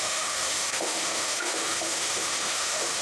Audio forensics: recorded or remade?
remade